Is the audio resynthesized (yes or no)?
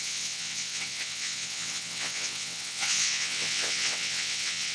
yes